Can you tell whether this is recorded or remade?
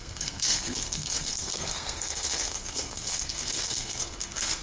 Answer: remade